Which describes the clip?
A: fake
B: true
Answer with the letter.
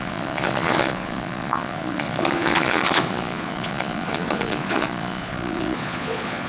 A